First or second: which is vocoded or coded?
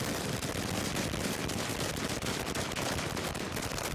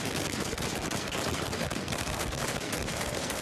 second